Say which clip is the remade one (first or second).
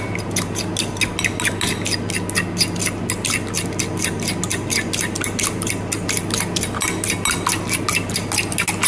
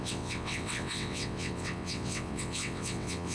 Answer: second